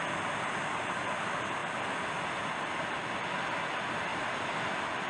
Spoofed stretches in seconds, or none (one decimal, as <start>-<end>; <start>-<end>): 4.1-5.1